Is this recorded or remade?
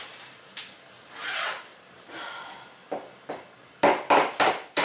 recorded